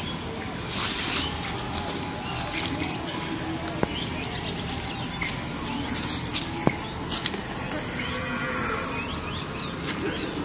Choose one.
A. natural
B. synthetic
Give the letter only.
A